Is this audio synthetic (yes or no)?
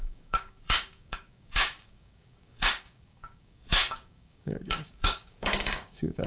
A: yes